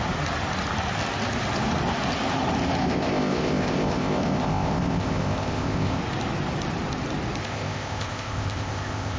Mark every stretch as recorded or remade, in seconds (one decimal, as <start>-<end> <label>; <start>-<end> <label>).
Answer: 0.0-2.8 recorded; 2.8-6.0 remade; 6.0-7.4 recorded; 7.4-9.2 remade